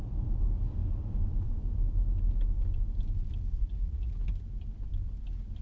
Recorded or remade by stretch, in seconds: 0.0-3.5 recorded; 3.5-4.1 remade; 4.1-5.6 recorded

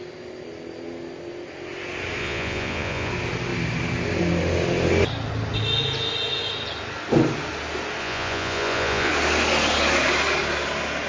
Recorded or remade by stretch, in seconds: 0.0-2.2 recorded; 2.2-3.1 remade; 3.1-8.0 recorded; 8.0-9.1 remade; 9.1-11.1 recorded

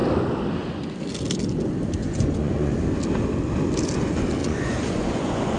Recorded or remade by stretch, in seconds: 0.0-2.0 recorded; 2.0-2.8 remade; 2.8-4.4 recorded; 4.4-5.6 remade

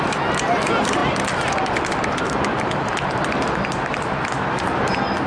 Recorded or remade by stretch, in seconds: 0.0-1.0 recorded; 1.0-4.2 remade; 4.2-5.3 recorded